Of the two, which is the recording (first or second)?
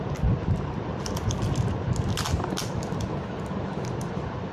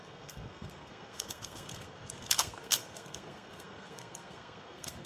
first